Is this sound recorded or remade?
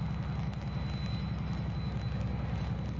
recorded